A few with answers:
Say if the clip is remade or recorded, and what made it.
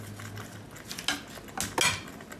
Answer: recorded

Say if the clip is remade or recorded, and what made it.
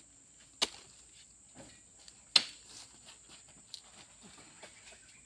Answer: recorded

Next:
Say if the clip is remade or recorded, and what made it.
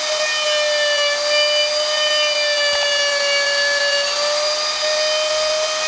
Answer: recorded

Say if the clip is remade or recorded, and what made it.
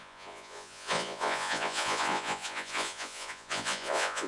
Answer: remade, vocoder, Vocos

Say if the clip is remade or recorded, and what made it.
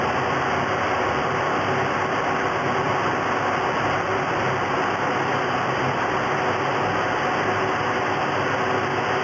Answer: recorded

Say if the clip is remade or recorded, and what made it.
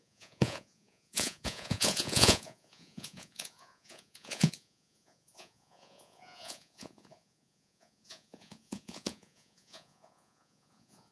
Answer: remade, vocoder, Vocos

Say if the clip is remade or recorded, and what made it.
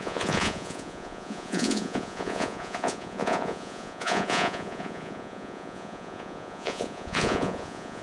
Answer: remade, vocoder, Vocos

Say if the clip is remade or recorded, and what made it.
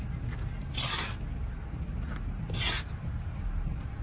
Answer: recorded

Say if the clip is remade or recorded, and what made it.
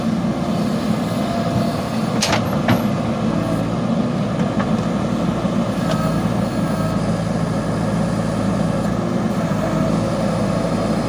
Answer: recorded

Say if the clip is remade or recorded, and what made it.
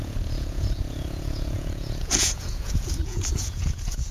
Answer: remade, vocoder, Vocos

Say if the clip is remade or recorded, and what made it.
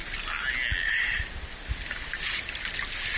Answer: recorded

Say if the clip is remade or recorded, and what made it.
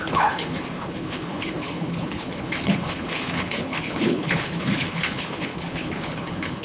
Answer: remade, codec, HILCodec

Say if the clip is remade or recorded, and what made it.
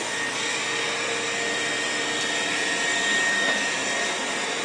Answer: recorded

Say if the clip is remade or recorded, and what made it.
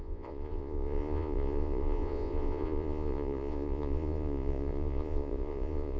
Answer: remade, vocoder, Vocos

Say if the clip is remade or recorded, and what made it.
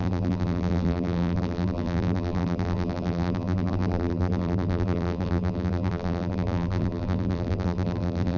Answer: remade, vocoder, BigVGAN v2